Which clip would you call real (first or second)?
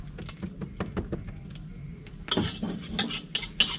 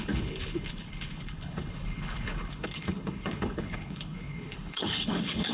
first